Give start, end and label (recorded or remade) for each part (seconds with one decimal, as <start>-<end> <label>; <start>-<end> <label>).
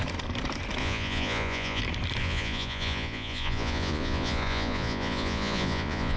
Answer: 0.0-0.8 recorded; 0.8-1.8 remade; 1.8-2.2 recorded; 2.2-6.2 remade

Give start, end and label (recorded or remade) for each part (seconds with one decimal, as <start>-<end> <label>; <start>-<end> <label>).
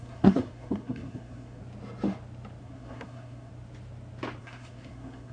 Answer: 0.0-1.6 remade; 1.6-2.6 recorded; 2.6-3.5 remade; 3.5-4.4 recorded; 4.4-5.3 remade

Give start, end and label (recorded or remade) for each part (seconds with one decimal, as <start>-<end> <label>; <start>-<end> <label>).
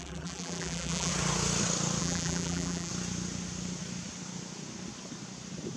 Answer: 0.0-1.1 remade; 1.1-2.0 recorded; 2.0-2.9 remade; 2.9-5.8 recorded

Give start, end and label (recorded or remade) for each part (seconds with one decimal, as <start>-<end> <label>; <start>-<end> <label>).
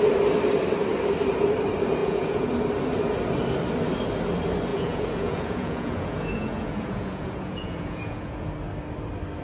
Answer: 0.0-2.0 recorded; 2.0-2.5 remade; 2.5-4.7 recorded; 4.7-8.5 remade; 8.5-9.4 recorded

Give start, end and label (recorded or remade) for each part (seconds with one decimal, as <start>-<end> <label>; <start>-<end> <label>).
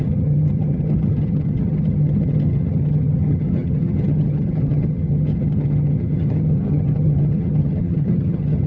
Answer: 0.0-8.7 remade